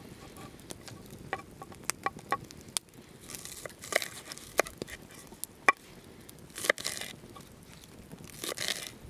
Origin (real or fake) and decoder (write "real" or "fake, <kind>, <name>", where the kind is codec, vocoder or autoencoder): real